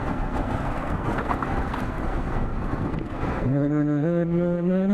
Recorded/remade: remade